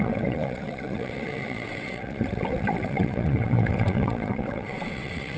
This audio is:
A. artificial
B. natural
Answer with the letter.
A